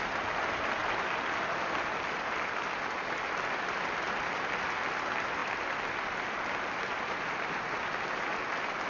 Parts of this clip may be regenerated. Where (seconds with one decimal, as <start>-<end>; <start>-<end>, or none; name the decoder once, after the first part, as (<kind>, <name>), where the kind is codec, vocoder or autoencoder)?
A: none